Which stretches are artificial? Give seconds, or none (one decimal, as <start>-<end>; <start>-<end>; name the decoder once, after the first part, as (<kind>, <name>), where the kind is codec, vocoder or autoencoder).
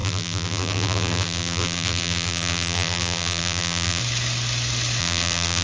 0.0-4.0 (vocoder, BigVGAN v2); 5.0-5.6